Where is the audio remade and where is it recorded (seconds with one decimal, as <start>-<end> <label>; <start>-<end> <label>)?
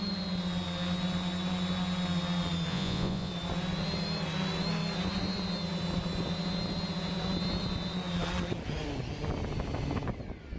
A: 0.0-2.7 recorded; 2.7-3.3 remade; 3.3-10.6 recorded